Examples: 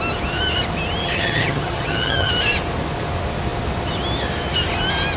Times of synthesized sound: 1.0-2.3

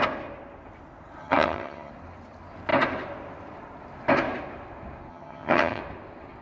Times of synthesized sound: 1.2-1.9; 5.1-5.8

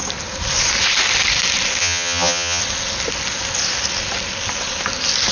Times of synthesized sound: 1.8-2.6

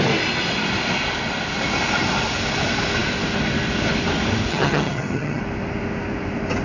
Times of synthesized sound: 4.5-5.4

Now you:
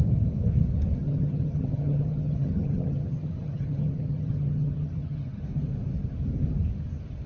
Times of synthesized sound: 1.0-5.4

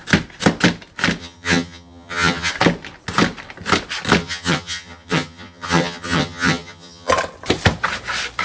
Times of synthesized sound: 1.2-2.5; 4.2-7.1